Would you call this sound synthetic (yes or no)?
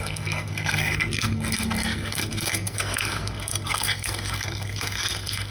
yes